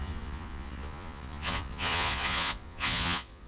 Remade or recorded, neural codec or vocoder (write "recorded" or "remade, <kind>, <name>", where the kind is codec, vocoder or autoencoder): remade, vocoder, Vocos